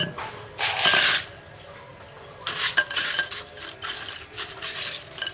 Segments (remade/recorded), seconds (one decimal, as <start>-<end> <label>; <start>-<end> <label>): 0.0-5.3 recorded